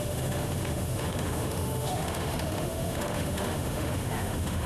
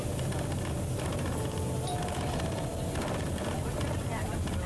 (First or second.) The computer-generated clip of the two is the first